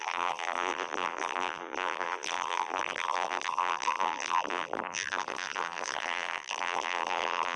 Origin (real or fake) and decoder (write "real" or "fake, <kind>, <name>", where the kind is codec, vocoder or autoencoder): fake, vocoder, BigVGAN v2